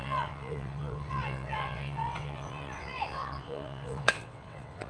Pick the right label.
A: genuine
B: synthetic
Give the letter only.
B